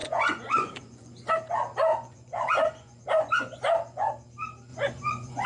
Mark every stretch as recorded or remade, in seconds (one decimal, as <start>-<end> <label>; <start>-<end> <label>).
0.0-1.3 remade; 1.3-1.9 recorded; 1.9-4.1 remade; 4.1-4.7 recorded; 4.7-5.5 remade